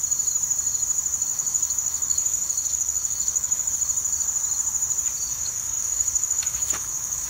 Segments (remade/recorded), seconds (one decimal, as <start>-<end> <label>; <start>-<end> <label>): 0.0-1.3 recorded; 1.3-3.7 remade; 3.7-5.3 recorded; 5.3-7.3 remade